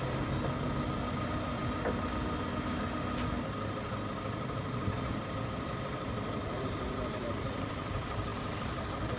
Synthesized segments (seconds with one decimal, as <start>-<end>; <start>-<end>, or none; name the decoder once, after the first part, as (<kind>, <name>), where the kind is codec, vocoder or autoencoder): none